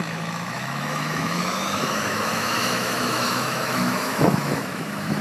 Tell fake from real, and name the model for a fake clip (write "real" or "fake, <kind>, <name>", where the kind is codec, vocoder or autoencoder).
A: fake, autoencoder, DAC-VAE